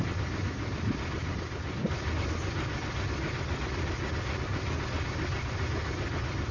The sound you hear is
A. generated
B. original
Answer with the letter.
B